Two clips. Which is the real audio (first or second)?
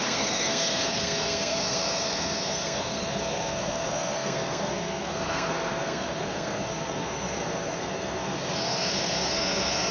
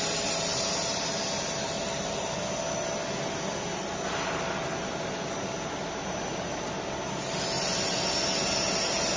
second